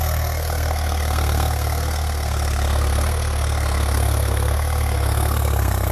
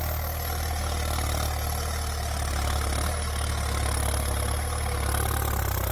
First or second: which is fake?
first